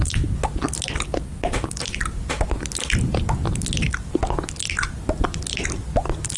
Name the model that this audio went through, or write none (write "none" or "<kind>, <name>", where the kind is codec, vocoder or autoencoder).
none